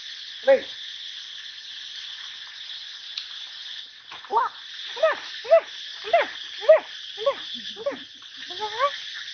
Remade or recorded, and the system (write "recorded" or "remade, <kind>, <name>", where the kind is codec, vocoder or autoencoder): recorded